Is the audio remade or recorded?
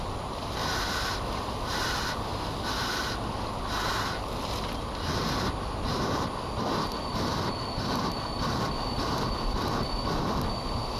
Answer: recorded